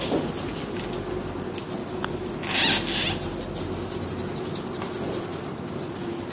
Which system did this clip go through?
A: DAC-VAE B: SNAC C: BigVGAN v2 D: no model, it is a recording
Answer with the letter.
D